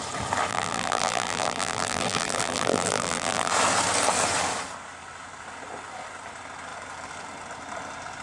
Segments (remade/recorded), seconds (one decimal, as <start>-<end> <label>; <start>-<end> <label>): 0.0-0.5 recorded; 0.5-3.5 remade; 3.5-8.2 recorded